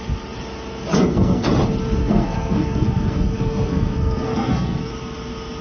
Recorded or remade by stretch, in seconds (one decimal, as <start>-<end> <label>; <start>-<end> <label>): 0.0-0.9 recorded; 0.9-1.5 remade; 1.5-2.0 recorded; 2.0-4.9 remade; 4.9-5.6 recorded